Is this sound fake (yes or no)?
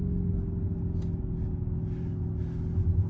no